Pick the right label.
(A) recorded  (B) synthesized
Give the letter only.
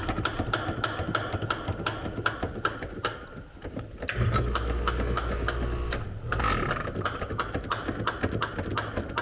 A